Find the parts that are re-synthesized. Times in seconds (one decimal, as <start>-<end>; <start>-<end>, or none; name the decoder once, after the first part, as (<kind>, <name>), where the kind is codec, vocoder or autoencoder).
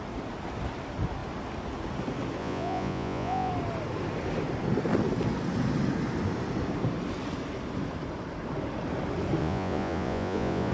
2.4-3.5 (vocoder, Vocos); 9.4-10.7